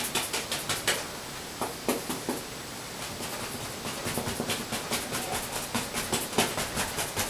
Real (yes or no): yes